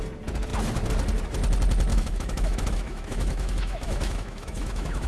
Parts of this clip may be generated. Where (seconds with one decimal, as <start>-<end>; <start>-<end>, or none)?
1.9-5.1